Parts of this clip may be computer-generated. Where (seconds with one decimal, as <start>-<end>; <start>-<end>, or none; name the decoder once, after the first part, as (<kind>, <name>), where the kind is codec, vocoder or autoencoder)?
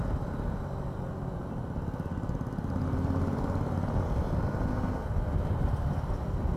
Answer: 0.0-6.6 (vocoder, BigVGAN v2)